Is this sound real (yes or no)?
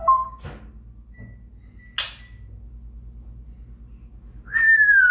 yes